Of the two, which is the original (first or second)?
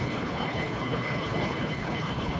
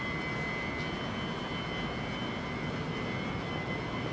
second